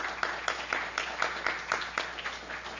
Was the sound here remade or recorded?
recorded